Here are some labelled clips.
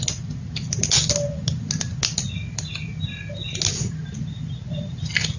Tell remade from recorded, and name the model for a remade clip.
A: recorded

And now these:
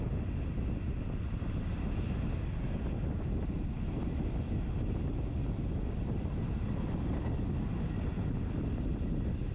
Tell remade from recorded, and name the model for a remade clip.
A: recorded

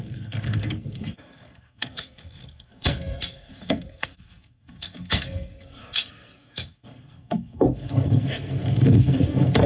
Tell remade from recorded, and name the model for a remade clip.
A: remade, codec, SNAC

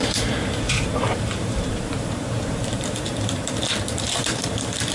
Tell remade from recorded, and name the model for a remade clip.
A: remade, vocoder, BigVGAN v2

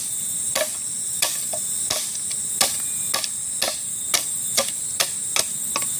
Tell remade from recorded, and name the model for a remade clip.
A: recorded